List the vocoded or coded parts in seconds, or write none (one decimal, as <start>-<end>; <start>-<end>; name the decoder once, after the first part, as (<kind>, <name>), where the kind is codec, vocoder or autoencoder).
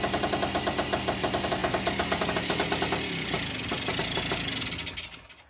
none